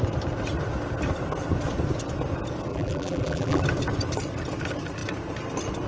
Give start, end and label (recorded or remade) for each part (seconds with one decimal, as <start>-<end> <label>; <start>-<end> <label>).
0.0-2.7 recorded; 2.7-3.6 remade; 3.6-5.9 recorded